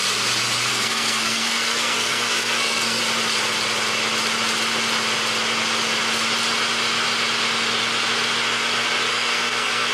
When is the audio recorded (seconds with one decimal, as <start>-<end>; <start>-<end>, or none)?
0.0-0.7; 3.0-9.1